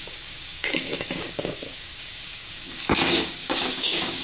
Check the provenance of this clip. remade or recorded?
remade